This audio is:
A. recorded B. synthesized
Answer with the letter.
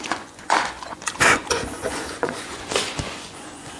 B